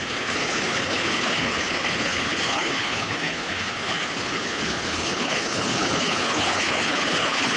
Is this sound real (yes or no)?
no